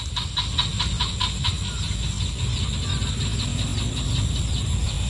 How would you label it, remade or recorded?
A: recorded